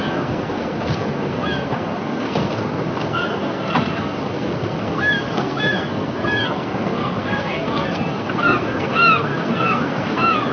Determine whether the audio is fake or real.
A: fake